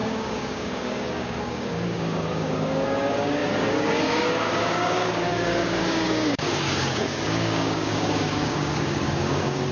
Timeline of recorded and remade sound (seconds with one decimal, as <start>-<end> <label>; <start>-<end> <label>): 0.0-9.7 remade